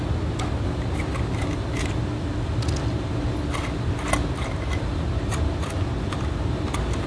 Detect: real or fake real